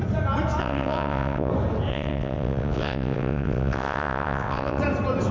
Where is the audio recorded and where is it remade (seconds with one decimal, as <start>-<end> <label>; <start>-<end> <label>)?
0.0-0.6 recorded; 0.6-1.5 remade; 1.5-1.9 recorded; 1.9-4.8 remade; 4.8-5.3 recorded